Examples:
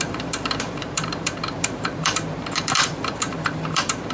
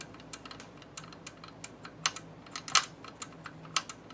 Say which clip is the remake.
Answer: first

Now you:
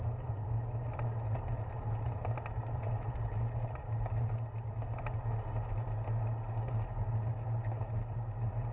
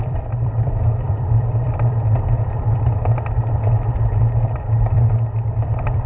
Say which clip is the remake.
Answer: second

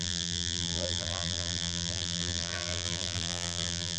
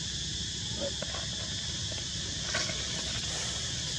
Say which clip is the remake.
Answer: first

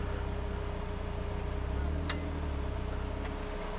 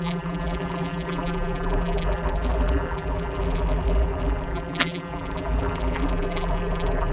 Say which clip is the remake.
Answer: second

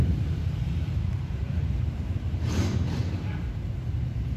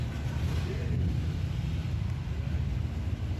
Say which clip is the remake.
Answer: first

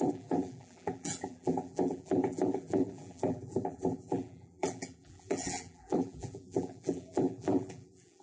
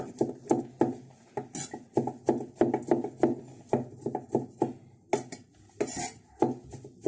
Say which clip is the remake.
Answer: first